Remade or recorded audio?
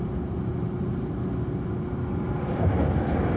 recorded